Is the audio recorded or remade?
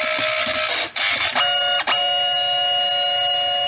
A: recorded